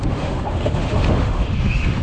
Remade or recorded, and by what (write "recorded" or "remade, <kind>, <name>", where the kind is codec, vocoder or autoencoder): remade, autoencoder, DAC-VAE